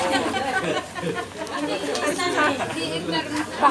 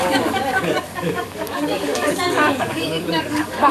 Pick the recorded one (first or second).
first